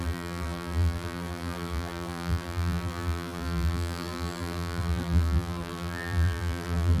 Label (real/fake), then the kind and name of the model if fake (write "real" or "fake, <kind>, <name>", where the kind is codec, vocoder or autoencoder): fake, vocoder, BigVGAN v2